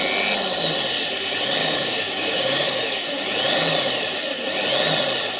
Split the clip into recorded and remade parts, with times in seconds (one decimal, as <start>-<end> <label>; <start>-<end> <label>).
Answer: 0.0-1.6 recorded; 1.6-3.1 remade; 3.1-5.4 recorded